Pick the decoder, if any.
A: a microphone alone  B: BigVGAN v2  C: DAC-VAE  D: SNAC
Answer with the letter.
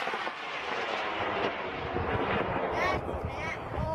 B